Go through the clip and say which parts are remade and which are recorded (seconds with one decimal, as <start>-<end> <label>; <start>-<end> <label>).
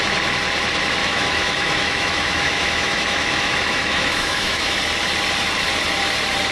0.0-1.0 recorded; 1.0-4.8 remade; 4.8-6.5 recorded